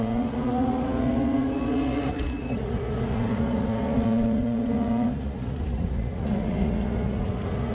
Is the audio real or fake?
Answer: fake